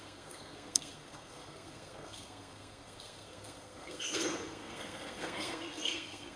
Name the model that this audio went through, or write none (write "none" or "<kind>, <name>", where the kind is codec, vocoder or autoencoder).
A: codec, SNAC